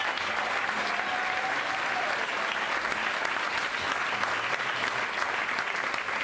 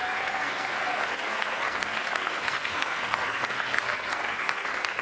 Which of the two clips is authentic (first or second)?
first